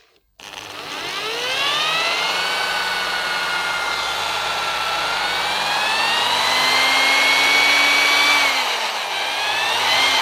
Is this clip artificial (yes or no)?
no